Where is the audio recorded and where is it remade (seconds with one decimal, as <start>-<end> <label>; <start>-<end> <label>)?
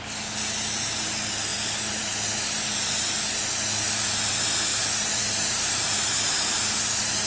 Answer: 0.0-1.5 recorded; 1.5-2.1 remade; 2.1-4.7 recorded; 4.7-6.7 remade; 6.7-7.3 recorded